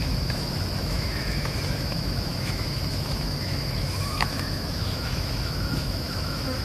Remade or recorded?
remade